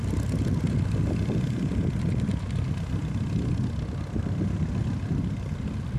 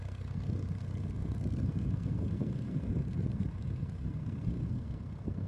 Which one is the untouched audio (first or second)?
first